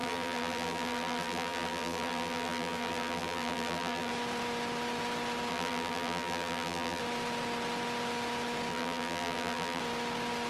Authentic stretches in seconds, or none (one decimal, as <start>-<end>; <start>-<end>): 4.1-5.5; 7.0-8.7; 9.8-10.5